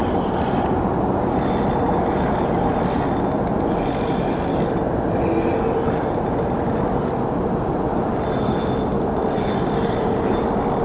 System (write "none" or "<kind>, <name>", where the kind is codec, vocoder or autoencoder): none